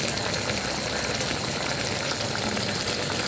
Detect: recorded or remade recorded